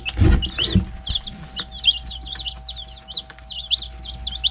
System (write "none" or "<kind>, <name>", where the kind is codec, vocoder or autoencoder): none